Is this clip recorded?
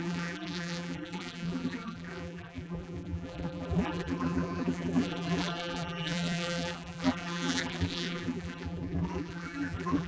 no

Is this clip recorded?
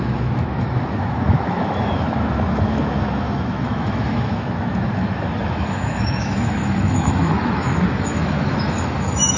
no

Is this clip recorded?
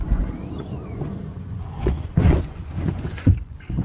no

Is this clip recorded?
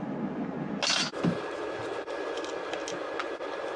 yes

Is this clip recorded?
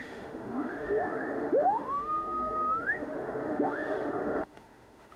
no